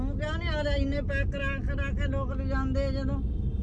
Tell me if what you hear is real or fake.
real